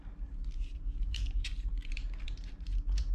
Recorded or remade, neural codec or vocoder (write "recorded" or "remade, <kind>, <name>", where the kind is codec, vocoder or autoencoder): remade, vocoder, BigVGAN v2